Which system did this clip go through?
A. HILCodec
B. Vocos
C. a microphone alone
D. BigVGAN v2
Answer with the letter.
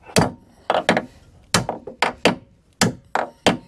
C